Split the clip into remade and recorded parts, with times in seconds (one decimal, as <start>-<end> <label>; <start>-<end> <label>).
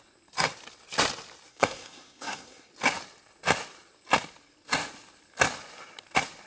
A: 0.0-1.5 recorded; 1.5-2.7 remade; 2.7-6.5 recorded